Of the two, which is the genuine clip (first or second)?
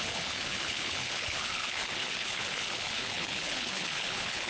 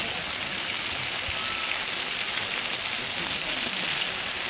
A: second